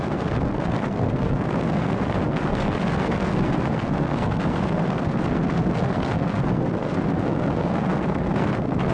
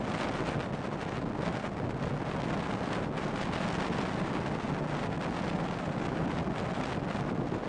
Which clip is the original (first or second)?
second